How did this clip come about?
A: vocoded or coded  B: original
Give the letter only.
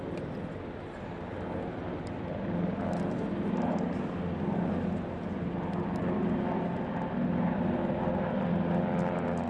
B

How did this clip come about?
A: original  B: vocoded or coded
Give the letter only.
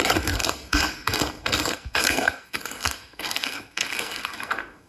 B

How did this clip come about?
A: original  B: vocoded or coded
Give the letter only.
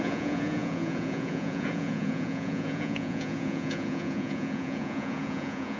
B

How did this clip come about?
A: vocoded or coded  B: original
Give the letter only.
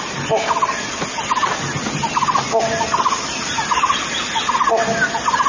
B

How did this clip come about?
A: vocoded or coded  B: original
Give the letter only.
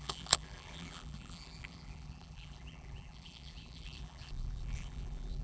A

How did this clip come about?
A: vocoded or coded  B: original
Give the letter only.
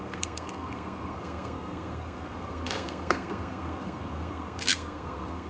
A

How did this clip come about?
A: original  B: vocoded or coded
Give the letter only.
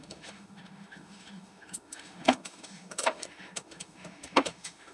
B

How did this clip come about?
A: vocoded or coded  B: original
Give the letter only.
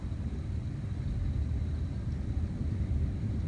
B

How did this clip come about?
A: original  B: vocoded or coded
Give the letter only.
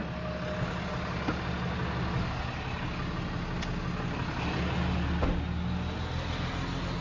A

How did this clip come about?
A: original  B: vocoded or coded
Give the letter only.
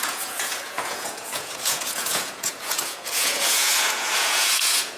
B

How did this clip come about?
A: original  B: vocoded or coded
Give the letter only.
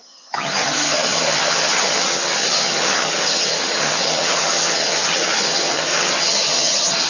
B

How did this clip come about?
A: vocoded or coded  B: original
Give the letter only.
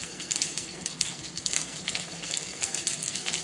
A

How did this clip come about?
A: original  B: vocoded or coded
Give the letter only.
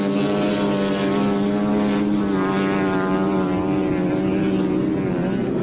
A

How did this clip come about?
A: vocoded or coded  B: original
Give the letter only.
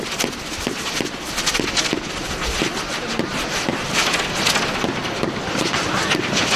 B